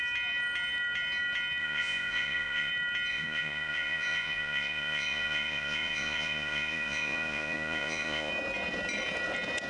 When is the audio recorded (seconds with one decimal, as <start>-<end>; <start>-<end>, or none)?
0.0-1.6; 2.7-3.1; 8.3-9.7